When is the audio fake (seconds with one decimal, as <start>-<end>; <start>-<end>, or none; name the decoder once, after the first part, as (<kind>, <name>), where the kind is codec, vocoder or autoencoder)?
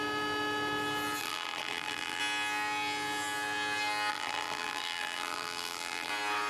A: 1.2-2.2 (vocoder, BigVGAN v2); 4.1-6.1